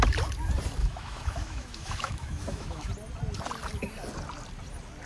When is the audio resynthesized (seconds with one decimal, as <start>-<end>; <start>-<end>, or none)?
0.8-2.9